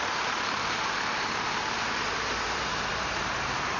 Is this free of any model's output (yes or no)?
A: no